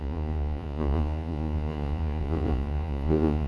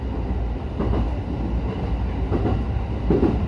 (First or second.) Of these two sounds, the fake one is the first